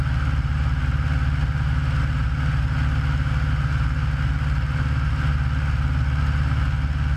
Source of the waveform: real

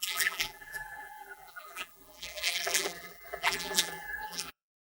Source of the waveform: fake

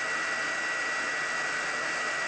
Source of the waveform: real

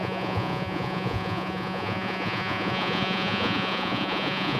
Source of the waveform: fake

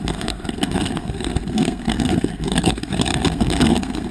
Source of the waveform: fake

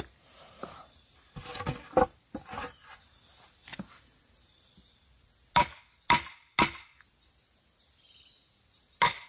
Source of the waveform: real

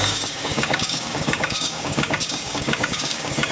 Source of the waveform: fake